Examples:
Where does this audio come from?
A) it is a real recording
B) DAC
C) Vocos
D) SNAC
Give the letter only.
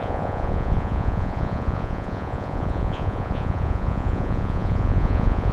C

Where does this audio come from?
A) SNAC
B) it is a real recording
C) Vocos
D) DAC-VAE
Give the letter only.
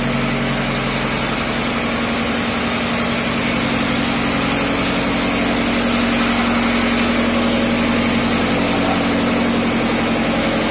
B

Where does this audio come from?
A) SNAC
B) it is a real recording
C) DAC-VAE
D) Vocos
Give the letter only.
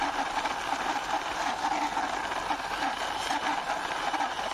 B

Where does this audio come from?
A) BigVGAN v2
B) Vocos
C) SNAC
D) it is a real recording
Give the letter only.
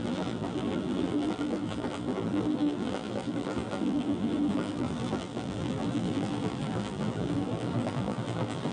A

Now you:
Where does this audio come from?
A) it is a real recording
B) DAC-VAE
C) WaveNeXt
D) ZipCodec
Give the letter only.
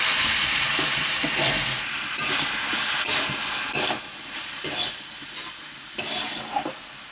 A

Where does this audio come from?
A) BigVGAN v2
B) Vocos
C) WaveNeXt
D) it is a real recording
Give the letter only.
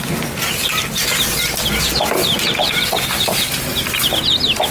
D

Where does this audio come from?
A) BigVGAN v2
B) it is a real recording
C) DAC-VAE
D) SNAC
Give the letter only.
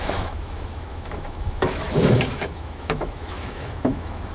C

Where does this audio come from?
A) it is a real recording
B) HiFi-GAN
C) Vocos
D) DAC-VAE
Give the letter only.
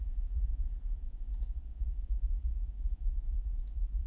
C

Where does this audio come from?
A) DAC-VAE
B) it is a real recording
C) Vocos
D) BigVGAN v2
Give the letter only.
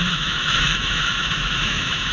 A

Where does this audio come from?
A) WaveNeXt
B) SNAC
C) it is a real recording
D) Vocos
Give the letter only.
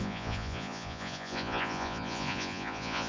D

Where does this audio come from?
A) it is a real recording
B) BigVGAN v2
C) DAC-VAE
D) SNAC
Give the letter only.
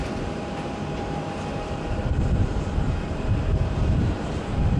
B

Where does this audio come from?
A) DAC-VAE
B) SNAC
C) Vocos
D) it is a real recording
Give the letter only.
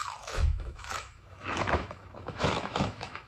A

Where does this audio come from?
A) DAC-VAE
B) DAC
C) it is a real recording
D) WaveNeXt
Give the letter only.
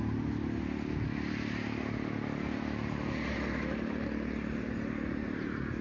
C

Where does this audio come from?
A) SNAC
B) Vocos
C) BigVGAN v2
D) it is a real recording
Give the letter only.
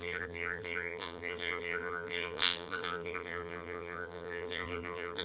C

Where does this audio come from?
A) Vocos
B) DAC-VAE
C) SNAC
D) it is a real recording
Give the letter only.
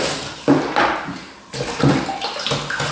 D